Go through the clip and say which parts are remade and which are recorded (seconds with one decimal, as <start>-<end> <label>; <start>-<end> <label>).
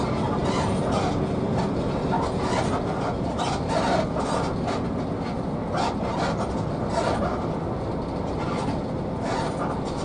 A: 0.0-10.0 recorded